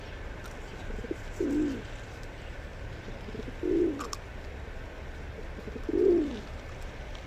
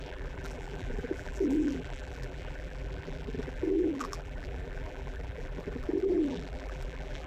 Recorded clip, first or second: first